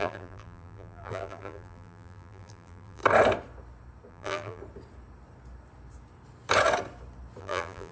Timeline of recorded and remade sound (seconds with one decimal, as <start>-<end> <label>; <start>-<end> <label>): 0.0-3.0 remade; 3.0-4.1 recorded; 4.1-4.6 remade; 4.6-7.4 recorded; 7.4-7.9 remade